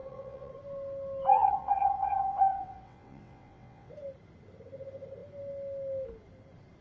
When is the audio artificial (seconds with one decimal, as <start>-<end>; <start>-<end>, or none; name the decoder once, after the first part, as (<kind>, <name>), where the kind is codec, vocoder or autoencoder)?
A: 0.0-0.5 (vocoder, WaveNeXt); 1.3-3.9